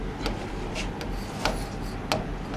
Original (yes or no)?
yes